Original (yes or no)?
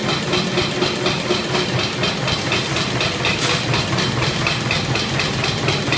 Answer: yes